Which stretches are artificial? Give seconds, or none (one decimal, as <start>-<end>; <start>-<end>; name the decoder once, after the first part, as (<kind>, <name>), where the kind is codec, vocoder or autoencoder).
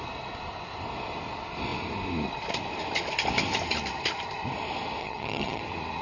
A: 5.0-5.6 (vocoder, HiFi-GAN)